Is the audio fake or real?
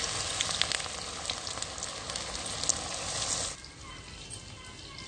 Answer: real